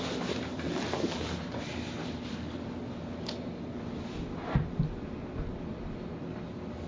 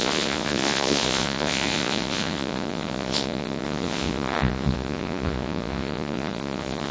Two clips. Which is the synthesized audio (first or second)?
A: second